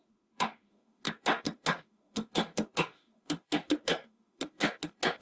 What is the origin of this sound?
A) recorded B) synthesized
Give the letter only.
B